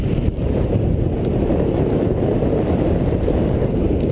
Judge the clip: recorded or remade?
remade